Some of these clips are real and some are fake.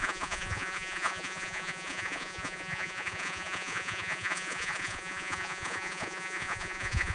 fake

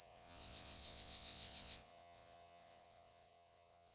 fake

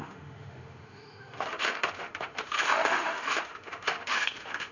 fake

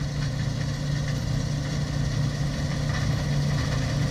real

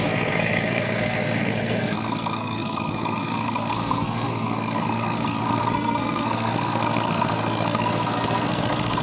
fake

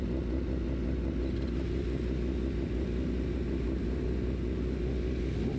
real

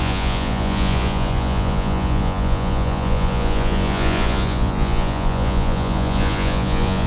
fake